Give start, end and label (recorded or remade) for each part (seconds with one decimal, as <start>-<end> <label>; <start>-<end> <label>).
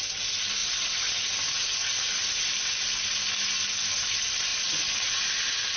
0.0-5.8 recorded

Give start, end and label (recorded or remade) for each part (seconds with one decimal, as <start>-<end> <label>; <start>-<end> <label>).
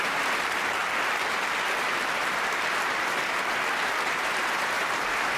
0.0-0.8 remade; 0.8-4.0 recorded; 4.0-5.4 remade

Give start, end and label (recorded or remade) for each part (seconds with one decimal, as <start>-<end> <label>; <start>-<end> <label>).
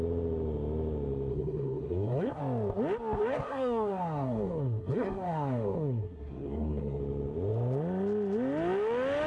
0.0-1.3 recorded; 1.3-2.4 remade; 2.4-3.3 recorded; 3.3-7.0 remade; 7.0-9.3 recorded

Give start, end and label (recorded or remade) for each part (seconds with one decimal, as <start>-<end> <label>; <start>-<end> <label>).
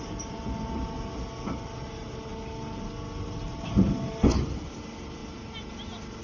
0.0-6.2 recorded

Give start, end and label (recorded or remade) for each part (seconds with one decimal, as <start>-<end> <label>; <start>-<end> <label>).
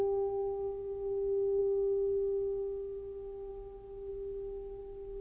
0.0-5.2 recorded